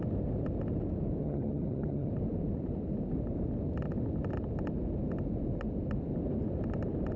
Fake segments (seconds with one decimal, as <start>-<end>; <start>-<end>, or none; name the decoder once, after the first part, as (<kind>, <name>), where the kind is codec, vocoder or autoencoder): 1.2-2.1 (vocoder, HiFi-GAN)